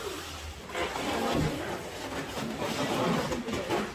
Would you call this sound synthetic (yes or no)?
no